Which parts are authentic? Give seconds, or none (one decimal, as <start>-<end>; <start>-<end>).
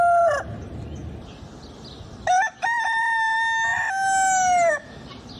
0.0-5.4